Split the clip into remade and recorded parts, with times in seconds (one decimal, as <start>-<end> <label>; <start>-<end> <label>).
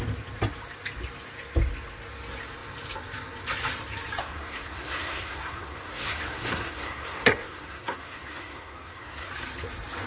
0.0-4.2 recorded; 4.2-9.3 remade; 9.3-10.1 recorded